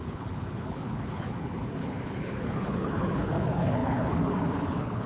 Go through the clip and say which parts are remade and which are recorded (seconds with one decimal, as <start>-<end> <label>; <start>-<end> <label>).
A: 0.0-5.1 remade